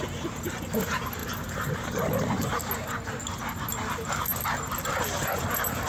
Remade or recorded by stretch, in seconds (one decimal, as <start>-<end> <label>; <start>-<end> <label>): 0.0-1.2 recorded; 1.2-1.7 remade; 1.7-5.9 recorded